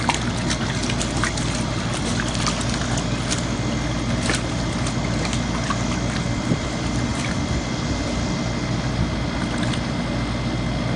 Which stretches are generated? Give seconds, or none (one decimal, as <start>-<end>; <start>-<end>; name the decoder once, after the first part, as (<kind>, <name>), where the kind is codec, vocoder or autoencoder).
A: none

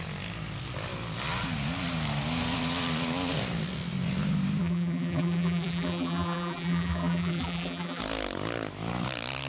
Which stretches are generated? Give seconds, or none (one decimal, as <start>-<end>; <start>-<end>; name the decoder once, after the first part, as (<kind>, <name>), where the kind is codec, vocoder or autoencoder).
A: 4.6-8.0 (vocoder, BigVGAN v2)

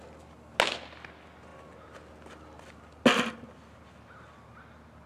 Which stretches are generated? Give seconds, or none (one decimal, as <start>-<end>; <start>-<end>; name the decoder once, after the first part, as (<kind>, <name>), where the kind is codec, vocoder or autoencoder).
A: none

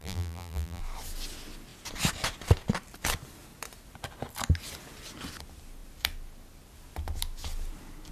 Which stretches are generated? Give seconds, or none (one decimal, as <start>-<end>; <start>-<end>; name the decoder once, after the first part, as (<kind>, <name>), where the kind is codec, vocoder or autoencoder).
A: 0.0-0.8 (vocoder, BigVGAN v2)

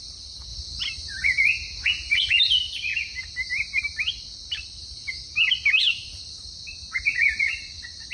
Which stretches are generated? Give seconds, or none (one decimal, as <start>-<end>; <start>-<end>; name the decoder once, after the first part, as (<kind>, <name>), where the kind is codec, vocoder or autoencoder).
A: 0.0-0.5 (vocoder, BigVGAN v2); 2.4-2.9; 3.5-4.8; 5.8-8.1